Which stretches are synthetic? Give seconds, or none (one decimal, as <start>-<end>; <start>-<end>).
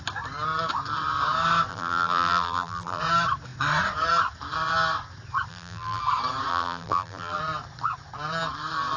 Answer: 1.7-3.0; 5.5-6.0; 6.5-7.4